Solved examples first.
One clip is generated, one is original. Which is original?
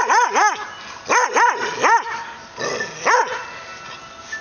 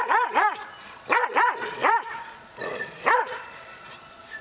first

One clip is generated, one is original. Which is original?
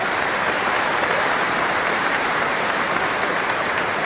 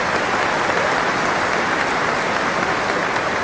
second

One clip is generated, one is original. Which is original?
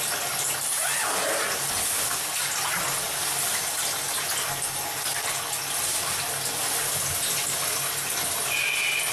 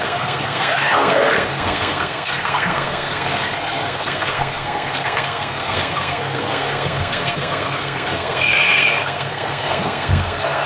first